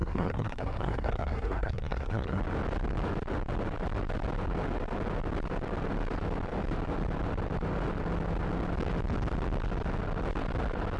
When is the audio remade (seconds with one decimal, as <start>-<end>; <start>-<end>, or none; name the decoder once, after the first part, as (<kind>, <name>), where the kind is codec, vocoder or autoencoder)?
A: 0.0-2.4 (codec, SNAC)